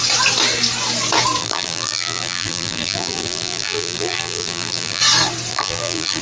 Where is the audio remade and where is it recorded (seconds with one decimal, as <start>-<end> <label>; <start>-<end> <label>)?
0.0-1.4 recorded; 1.4-5.0 remade; 5.0-5.5 recorded; 5.5-6.2 remade